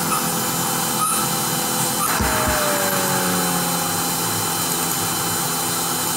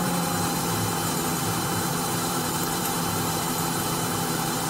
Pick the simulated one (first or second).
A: second